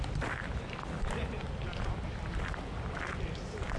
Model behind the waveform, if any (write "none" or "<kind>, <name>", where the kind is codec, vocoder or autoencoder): vocoder, BigVGAN v2